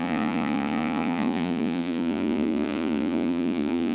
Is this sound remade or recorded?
remade